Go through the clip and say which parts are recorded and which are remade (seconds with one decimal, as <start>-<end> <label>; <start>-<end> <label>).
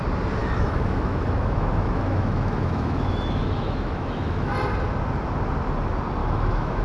0.0-0.4 recorded; 0.4-4.5 remade; 4.5-6.2 recorded; 6.2-6.8 remade